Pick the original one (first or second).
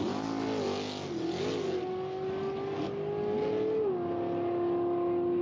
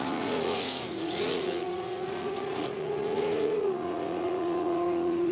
first